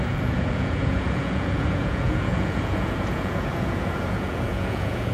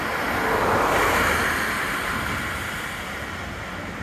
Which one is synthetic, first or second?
first